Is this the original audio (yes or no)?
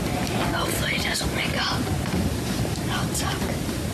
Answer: yes